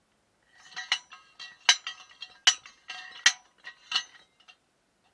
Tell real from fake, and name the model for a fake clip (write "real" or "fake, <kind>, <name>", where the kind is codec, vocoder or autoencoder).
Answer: real